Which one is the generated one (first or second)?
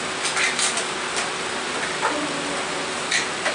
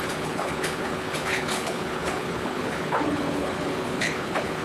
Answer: second